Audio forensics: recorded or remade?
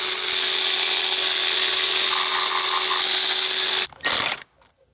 recorded